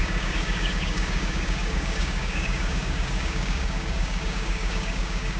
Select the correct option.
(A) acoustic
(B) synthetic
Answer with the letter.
B